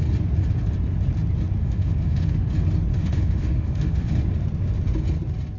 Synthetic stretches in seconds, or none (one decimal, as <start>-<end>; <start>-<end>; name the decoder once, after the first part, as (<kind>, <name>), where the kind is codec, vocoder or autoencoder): 1.6-2.5 (autoencoder, DAC-VAE); 2.9-4.1